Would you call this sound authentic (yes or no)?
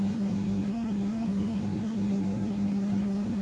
no